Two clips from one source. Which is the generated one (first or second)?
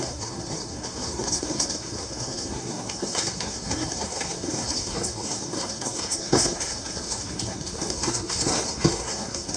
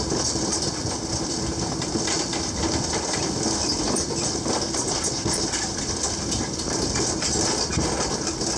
first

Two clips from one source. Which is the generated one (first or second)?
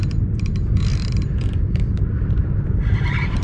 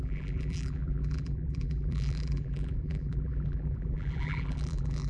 second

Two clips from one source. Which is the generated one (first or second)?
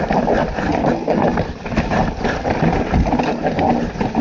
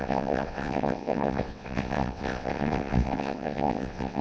second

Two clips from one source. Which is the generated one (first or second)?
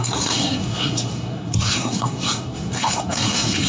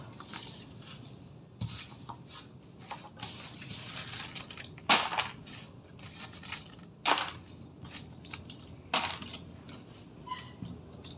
first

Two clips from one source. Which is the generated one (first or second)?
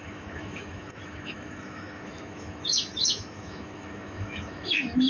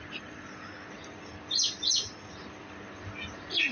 first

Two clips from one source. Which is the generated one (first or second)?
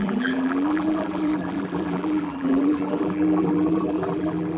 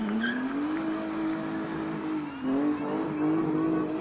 first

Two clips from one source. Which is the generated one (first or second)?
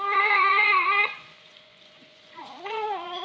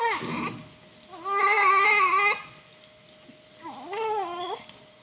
first